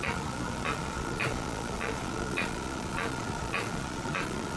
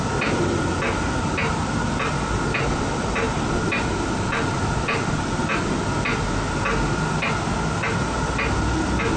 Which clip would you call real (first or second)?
second